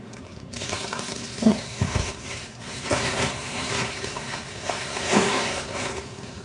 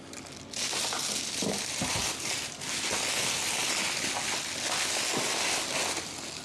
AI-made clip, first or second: first